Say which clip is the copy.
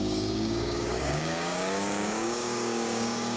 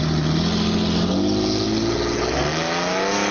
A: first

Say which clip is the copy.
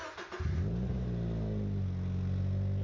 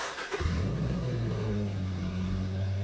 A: second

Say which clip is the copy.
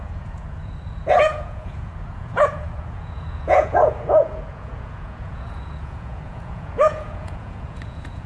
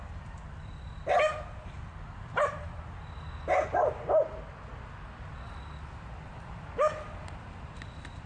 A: first